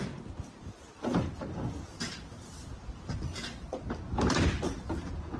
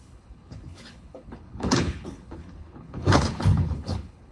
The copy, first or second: second